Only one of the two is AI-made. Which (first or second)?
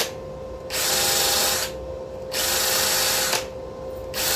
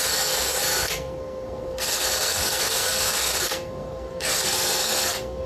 second